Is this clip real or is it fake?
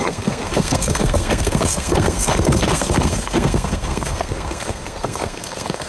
fake